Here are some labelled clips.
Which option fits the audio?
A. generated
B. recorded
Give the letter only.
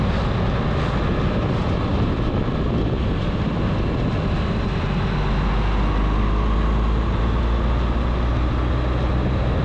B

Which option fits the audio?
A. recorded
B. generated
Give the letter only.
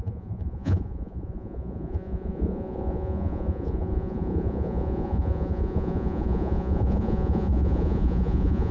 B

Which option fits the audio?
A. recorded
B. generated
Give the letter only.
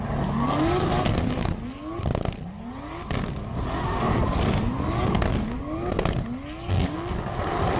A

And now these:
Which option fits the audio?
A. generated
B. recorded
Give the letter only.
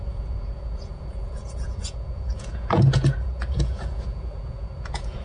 A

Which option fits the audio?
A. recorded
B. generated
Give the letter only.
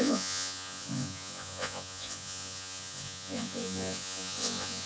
B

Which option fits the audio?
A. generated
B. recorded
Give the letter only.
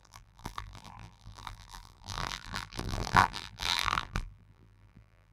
A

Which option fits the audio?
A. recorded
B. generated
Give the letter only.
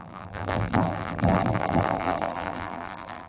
B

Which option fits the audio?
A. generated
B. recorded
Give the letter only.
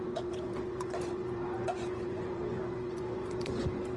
A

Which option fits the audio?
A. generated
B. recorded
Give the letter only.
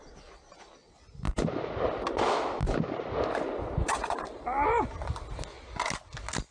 B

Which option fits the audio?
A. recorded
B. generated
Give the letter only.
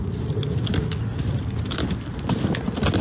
A